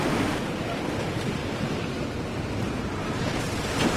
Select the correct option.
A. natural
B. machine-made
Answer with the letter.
A